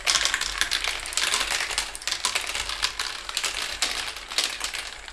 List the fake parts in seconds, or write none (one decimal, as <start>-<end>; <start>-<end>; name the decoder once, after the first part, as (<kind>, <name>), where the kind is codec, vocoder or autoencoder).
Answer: none